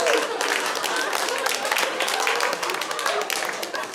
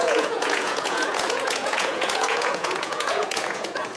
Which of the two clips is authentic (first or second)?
first